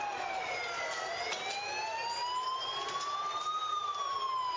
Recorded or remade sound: recorded